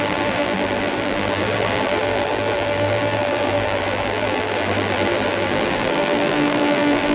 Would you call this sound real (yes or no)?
no